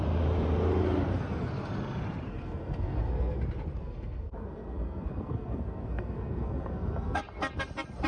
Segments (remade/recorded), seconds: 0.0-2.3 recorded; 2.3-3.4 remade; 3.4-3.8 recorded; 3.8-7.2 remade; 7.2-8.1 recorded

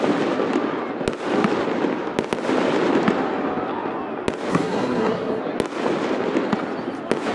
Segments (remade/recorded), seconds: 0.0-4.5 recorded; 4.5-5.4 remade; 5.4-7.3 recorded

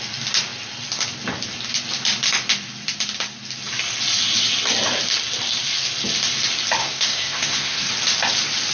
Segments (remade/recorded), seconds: 0.0-6.8 recorded; 6.8-7.9 remade; 7.9-8.7 recorded